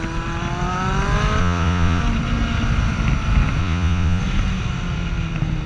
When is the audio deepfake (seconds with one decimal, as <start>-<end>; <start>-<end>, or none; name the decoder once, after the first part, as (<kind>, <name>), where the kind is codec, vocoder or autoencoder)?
1.4-2.0 (vocoder, Vocos); 3.6-4.2